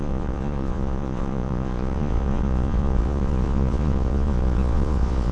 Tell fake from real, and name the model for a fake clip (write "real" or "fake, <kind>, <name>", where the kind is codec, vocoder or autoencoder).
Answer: fake, vocoder, Vocos